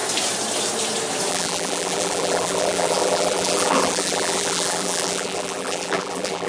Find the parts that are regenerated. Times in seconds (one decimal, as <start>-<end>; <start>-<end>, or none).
1.3-6.5